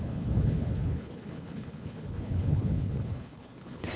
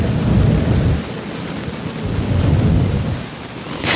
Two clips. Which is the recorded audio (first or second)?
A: second